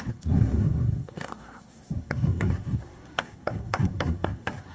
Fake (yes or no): yes